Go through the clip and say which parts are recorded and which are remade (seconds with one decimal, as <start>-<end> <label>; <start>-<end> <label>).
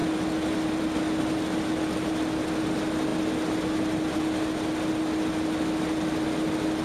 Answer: 0.0-6.8 recorded